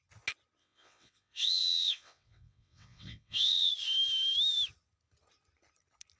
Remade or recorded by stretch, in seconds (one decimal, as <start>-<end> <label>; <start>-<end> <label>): 0.0-0.6 recorded; 0.6-3.7 remade; 3.7-6.2 recorded